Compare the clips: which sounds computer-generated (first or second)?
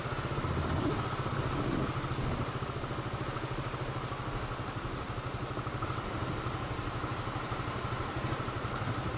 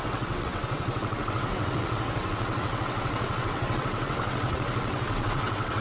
second